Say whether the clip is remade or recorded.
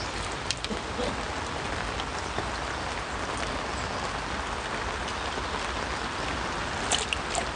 recorded